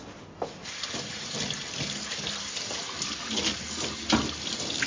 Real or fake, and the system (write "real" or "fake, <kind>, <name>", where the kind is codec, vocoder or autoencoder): real